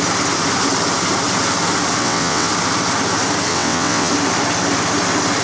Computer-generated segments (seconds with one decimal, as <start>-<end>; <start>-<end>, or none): 2.0-2.5; 3.5-4.1